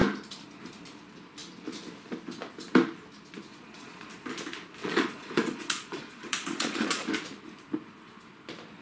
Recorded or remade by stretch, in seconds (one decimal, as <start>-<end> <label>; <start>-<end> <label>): 0.0-3.5 recorded; 3.5-4.1 remade; 4.1-4.8 recorded; 4.8-7.1 remade; 7.1-8.8 recorded